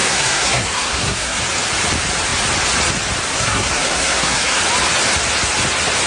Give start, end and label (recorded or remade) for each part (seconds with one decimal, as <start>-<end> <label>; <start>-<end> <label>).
0.0-1.4 remade; 1.4-3.3 recorded; 3.3-4.6 remade; 4.6-6.1 recorded